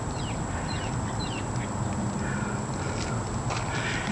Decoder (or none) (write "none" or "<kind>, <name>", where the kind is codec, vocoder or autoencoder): none